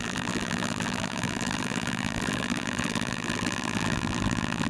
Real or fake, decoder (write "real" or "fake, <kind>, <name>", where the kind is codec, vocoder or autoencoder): fake, vocoder, BigVGAN v2